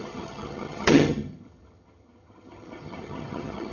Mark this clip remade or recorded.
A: remade